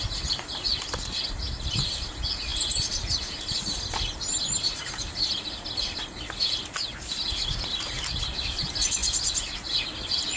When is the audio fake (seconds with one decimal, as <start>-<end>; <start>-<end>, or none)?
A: none